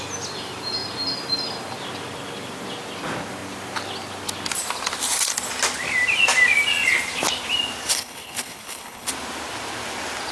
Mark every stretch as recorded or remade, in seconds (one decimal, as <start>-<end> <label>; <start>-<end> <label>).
0.0-7.9 recorded; 7.9-9.1 remade; 9.1-10.3 recorded